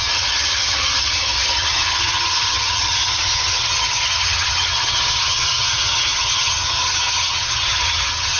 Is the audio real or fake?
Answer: fake